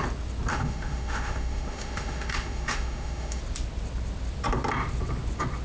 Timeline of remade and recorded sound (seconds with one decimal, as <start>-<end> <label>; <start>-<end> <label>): 0.0-0.5 recorded; 0.5-3.4 remade; 3.4-5.6 recorded